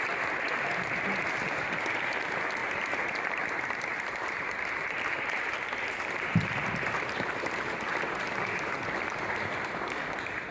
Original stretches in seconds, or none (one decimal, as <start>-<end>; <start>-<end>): 0.0-2.6; 5.5-10.5